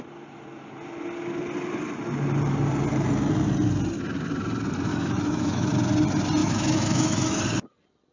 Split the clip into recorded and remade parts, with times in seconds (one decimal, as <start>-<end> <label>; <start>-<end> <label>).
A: 0.0-4.9 recorded; 4.9-5.7 remade; 5.7-6.4 recorded; 6.4-7.4 remade; 7.4-8.1 recorded